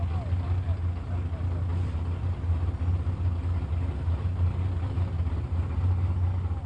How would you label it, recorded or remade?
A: recorded